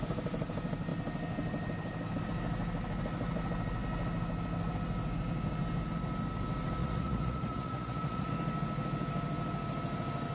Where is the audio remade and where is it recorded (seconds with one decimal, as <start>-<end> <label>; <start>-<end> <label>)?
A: 0.0-6.8 recorded; 6.8-8.3 remade; 8.3-10.3 recorded